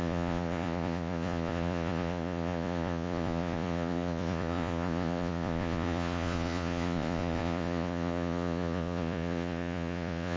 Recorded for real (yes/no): no